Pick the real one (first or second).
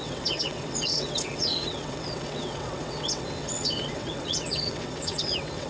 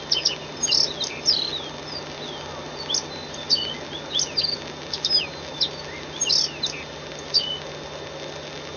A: second